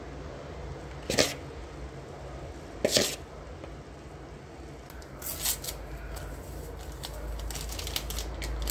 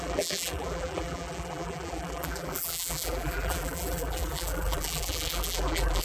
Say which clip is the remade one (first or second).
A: second